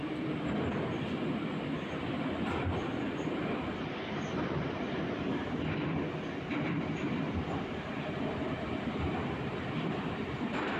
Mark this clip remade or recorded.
remade